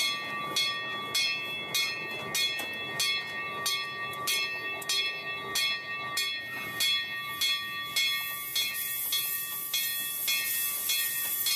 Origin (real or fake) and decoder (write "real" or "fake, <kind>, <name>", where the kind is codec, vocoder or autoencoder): real